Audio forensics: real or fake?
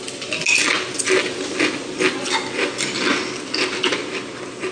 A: real